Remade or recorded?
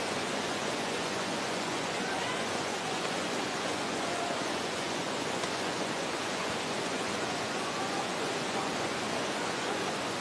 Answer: remade